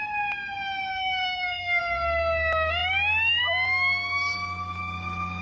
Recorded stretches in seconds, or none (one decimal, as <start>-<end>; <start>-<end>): 0.0-0.9; 1.8-5.4